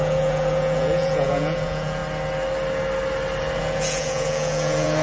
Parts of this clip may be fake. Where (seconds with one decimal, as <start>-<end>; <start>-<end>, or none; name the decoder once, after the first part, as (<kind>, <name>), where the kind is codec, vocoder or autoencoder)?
0.0-2.0 (vocoder, Vocos); 3.6-5.0

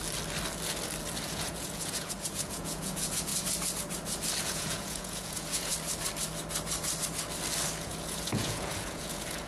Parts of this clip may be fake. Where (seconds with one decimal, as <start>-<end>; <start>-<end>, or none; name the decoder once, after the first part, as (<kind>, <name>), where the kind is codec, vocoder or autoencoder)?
1.3-3.3 (vocoder, Vocos); 4.4-5.7; 7.8-9.5

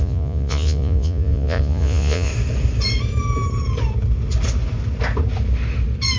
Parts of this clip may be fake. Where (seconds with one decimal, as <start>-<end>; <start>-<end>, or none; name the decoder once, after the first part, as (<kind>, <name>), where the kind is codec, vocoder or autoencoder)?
0.0-2.3 (vocoder, Vocos)